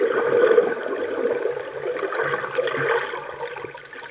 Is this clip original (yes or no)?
yes